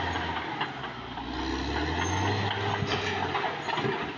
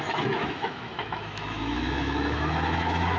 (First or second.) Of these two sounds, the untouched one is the first